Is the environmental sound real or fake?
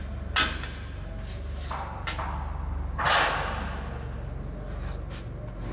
real